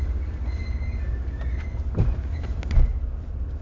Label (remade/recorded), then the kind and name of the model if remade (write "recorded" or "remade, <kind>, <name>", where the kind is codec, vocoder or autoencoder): recorded